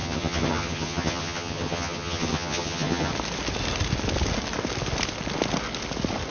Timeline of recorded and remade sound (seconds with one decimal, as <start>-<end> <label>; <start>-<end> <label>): 0.0-3.1 remade; 3.1-6.3 recorded